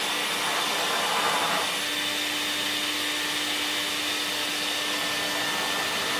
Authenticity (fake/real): real